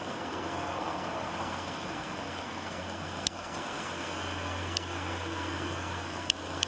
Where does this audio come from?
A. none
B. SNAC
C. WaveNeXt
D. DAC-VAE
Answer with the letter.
B